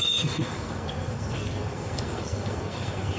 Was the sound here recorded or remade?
remade